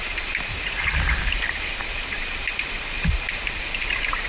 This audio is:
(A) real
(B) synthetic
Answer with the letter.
A